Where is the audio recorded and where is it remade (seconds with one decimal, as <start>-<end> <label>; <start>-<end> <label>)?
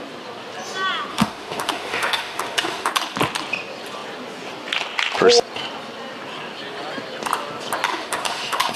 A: 0.0-1.1 recorded; 1.1-2.9 remade; 2.9-7.9 recorded; 7.9-8.8 remade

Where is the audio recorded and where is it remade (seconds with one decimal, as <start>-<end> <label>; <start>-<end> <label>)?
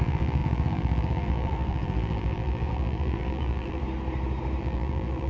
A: 0.0-3.8 remade; 3.8-4.6 recorded; 4.6-5.3 remade